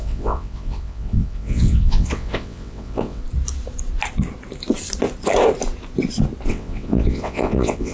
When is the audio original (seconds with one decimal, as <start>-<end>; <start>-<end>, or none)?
3.2-6.5